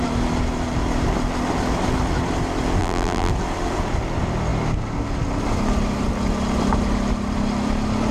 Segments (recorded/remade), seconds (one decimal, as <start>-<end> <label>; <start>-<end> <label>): 0.0-2.8 recorded; 2.8-3.3 remade; 3.3-8.1 recorded